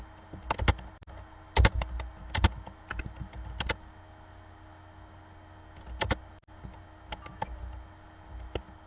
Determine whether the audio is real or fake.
real